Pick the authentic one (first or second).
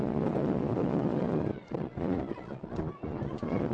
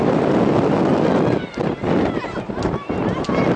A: second